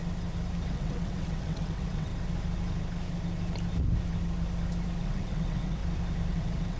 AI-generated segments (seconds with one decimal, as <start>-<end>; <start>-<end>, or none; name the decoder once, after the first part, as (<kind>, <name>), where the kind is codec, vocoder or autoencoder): 0.7-2.1 (vocoder, WaveNeXt); 5.0-5.8; 6.3-6.8